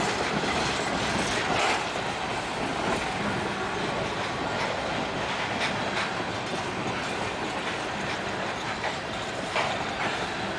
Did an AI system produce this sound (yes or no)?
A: no